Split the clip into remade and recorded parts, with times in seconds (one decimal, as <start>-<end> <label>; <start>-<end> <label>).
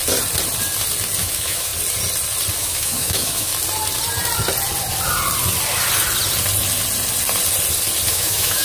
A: 0.0-1.2 recorded; 1.2-1.7 remade; 1.7-2.6 recorded; 2.6-3.5 remade; 3.5-8.1 recorded; 8.1-8.6 remade